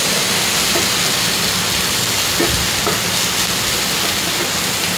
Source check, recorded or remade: recorded